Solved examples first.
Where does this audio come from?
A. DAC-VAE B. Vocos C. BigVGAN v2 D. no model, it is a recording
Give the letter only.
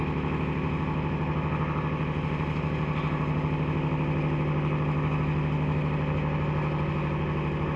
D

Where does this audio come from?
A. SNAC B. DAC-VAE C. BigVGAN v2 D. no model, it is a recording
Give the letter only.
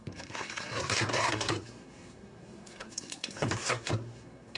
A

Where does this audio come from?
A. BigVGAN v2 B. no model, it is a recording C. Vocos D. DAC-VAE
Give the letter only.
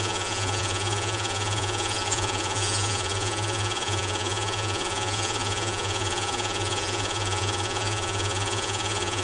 C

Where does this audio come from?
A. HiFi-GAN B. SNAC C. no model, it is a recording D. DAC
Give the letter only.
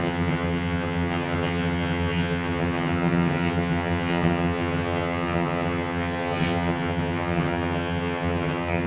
A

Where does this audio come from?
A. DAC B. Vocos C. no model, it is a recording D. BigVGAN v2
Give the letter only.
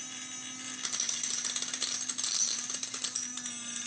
C